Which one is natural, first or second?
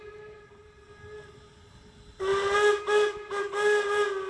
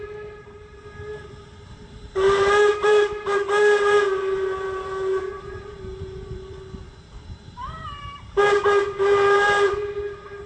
first